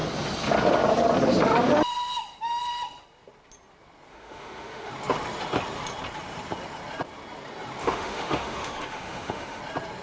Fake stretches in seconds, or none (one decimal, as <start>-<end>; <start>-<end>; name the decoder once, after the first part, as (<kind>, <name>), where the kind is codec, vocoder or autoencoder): 4.1-4.9 (autoencoder, DAC-VAE); 7.8-9.6